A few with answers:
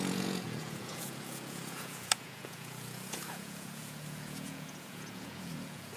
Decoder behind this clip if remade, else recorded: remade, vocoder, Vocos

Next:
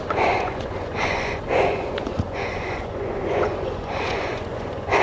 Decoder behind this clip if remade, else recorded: remade, vocoder, Vocos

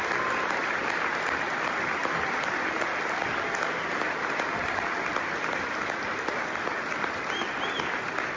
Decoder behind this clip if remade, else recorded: recorded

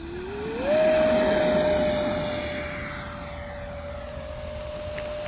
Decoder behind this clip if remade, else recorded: recorded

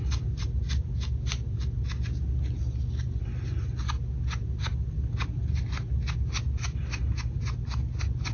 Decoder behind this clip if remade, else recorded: recorded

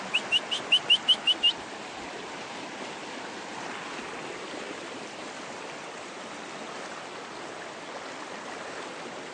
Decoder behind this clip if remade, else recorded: recorded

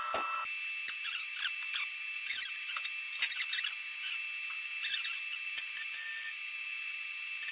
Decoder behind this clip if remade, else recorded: recorded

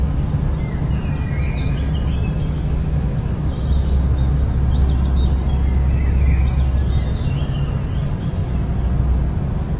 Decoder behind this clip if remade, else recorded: recorded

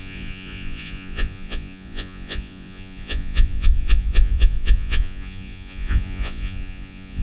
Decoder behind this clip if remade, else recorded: remade, vocoder, Vocos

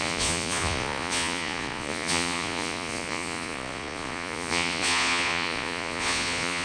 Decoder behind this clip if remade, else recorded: remade, vocoder, Vocos